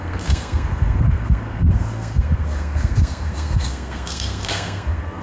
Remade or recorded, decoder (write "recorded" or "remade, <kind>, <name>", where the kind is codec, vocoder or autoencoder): remade, codec, SNAC